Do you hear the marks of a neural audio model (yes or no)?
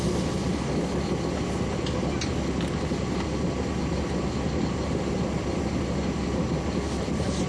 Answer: no